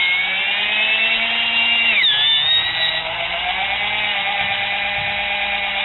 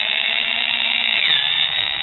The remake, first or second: second